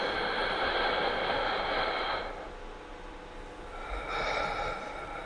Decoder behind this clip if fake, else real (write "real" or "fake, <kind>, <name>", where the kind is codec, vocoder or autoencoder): real